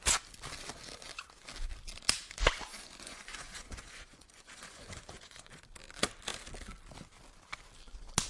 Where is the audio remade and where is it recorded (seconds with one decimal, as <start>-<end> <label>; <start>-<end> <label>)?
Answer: 0.0-2.7 recorded; 2.7-5.6 remade; 5.6-8.3 recorded